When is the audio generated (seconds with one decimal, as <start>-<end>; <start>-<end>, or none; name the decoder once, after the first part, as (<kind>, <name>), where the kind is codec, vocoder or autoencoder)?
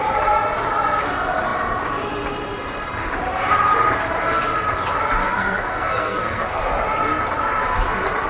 5.2-6.6 (codec, SNAC)